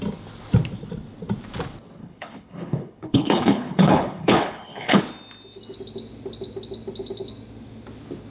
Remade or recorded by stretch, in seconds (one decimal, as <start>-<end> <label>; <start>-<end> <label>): 0.0-2.0 recorded; 2.0-5.0 remade; 5.0-8.3 recorded